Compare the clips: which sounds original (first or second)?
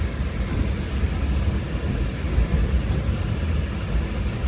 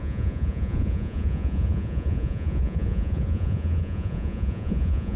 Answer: first